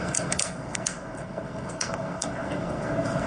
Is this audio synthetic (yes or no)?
yes